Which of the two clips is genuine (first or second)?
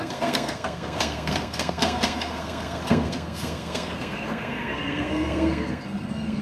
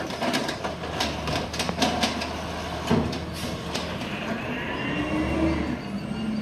second